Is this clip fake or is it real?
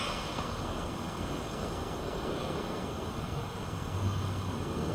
fake